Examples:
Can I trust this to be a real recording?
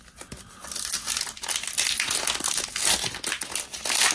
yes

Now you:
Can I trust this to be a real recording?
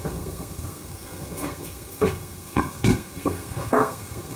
no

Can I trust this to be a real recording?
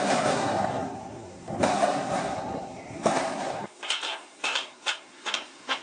no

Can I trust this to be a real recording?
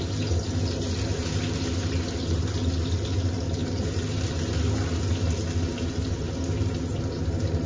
yes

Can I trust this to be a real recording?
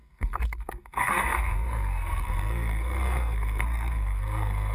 no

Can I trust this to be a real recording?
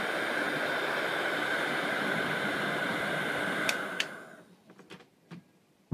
yes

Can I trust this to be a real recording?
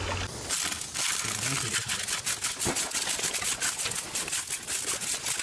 yes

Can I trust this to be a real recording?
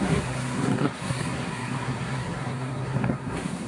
no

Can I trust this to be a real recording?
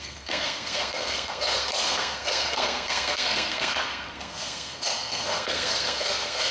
no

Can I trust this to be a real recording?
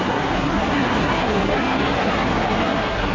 no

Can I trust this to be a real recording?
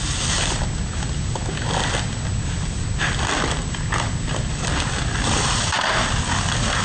yes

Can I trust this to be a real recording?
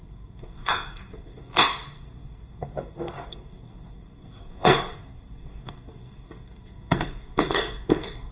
no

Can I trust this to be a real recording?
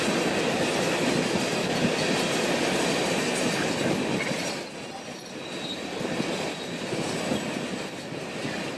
yes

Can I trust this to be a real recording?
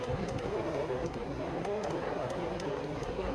no